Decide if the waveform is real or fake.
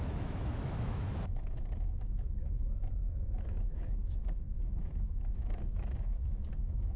fake